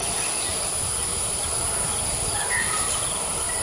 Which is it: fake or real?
real